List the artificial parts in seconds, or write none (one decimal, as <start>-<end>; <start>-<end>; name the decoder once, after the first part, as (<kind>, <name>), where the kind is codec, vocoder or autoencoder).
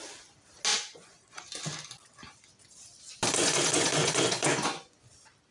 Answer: 0.7-1.4 (vocoder, Vocos); 3.4-5.1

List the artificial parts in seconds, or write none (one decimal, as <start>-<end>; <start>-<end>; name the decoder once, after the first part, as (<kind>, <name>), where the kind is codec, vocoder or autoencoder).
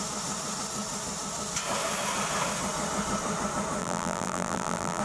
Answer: 3.8-5.0 (vocoder, BigVGAN v2)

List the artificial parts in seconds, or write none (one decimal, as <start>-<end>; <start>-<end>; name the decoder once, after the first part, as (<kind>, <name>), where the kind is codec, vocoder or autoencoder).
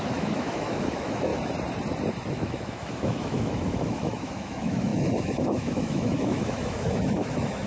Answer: 0.0-1.3 (autoencoder, DAC-VAE); 2.3-7.7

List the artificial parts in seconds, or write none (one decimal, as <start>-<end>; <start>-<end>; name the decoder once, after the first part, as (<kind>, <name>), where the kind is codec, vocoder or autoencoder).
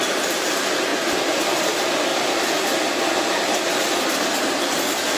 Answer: 0.0-2.1 (vocoder, BigVGAN v2); 3.2-5.2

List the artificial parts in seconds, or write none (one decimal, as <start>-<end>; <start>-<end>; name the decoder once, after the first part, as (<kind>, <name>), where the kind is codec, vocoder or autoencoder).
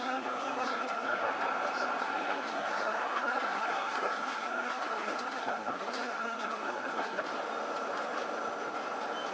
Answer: 0.0-1.3 (codec, SNAC); 2.0-7.2